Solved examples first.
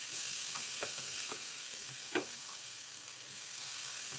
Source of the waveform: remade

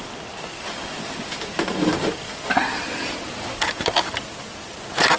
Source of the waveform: recorded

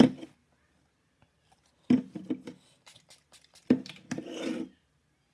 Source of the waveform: recorded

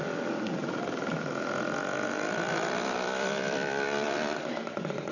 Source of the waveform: remade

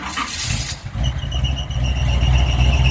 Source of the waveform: recorded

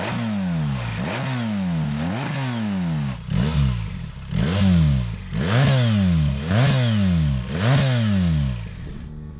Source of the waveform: recorded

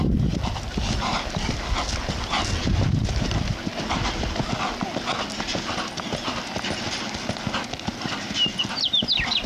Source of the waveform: recorded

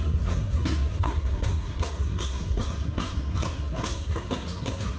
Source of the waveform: remade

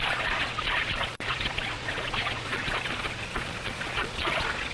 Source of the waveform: remade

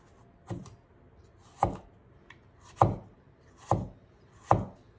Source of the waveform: recorded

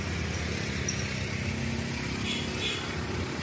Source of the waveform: recorded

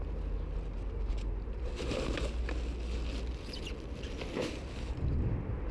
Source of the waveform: recorded